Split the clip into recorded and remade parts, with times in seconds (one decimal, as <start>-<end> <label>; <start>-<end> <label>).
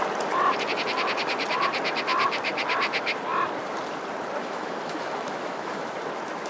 0.0-4.4 recorded; 4.4-5.9 remade; 5.9-6.5 recorded